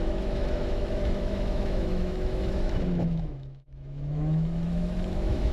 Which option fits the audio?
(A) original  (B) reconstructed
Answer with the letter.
B